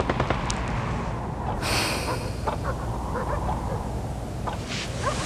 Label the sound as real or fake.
real